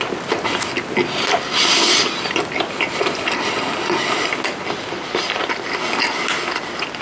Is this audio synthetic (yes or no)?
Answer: no